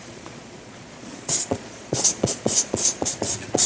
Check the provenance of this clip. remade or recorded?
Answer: remade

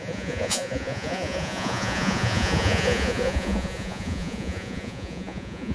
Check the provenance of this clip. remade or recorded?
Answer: remade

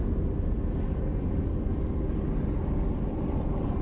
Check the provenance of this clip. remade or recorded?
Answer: recorded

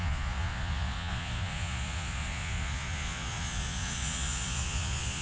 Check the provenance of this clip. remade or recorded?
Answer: remade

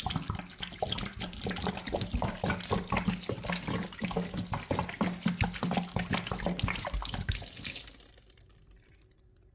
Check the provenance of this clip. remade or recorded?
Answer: recorded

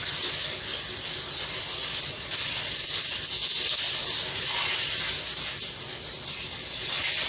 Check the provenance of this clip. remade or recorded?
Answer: recorded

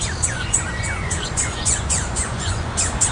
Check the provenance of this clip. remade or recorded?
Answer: remade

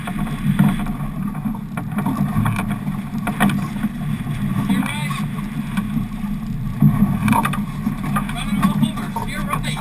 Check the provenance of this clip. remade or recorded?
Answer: recorded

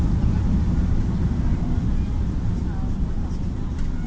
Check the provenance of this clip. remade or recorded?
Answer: recorded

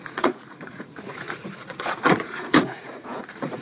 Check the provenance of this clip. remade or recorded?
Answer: remade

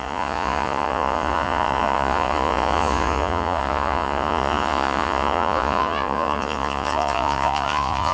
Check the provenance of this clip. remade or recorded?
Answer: remade